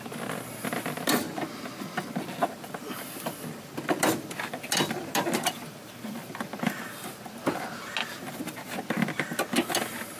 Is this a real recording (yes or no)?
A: yes